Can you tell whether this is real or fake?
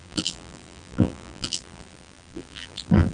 fake